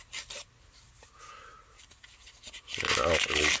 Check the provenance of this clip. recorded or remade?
recorded